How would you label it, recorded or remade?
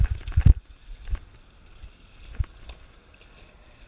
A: recorded